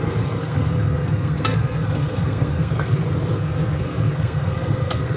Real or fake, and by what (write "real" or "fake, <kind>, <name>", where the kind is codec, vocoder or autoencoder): fake, codec, SNAC